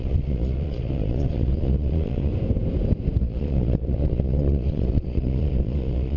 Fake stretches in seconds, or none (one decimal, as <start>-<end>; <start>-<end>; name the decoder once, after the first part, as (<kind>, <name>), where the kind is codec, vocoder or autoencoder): 0.0-2.3 (vocoder, Vocos); 3.2-6.2